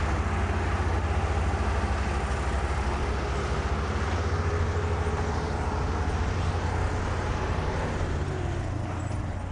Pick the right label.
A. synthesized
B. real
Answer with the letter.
B